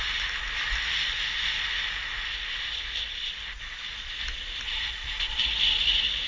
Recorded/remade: recorded